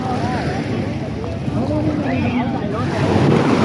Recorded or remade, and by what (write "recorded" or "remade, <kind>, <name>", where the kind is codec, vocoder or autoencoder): recorded